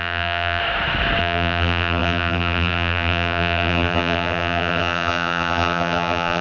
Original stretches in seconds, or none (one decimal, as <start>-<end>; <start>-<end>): 0.6-1.2